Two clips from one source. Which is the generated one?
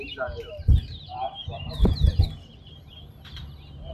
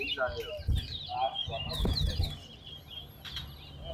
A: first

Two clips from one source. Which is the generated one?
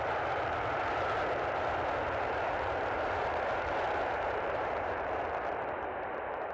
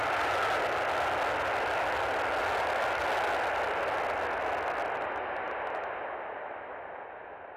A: first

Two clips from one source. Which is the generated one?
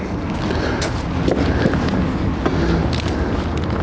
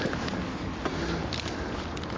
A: second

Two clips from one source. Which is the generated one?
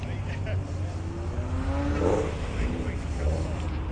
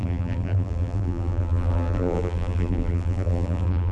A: second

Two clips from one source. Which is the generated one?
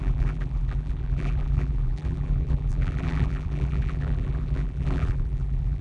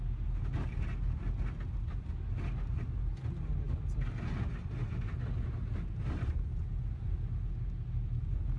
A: first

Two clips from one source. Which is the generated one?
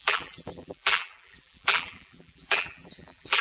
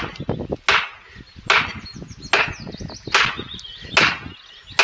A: first